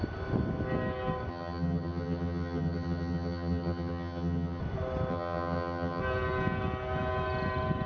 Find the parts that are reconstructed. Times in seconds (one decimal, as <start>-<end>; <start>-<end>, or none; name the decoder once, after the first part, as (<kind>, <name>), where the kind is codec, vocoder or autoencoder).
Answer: 1.3-4.6 (vocoder, HiFi-GAN); 5.1-6.0